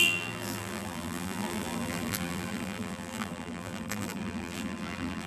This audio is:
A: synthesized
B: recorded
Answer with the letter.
A